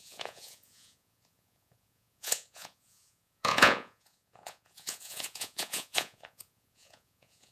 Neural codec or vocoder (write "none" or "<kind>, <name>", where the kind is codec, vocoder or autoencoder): vocoder, Vocos